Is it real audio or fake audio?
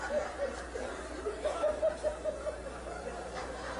fake